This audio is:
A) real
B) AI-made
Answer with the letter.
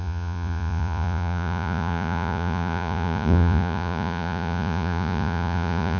B